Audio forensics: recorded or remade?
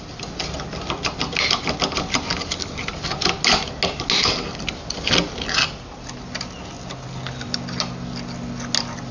recorded